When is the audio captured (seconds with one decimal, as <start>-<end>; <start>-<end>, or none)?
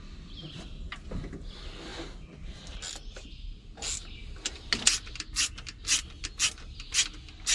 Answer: 0.0-7.5